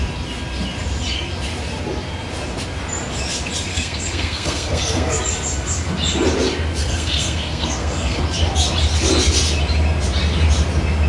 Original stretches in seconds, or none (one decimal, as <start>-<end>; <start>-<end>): 0.0-3.7; 5.2-6.8; 8.2-11.1

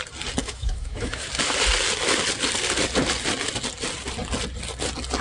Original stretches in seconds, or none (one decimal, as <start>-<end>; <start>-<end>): 0.0-0.4; 1.3-5.2

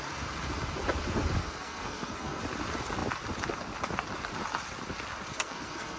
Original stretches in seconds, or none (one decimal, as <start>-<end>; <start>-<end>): 0.0-1.4; 2.4-5.3

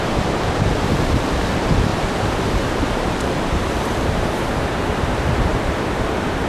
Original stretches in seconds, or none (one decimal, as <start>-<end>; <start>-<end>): 5.5-6.1

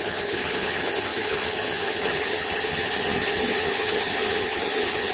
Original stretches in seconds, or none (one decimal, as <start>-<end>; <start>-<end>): none